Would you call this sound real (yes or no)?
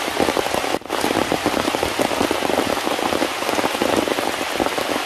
yes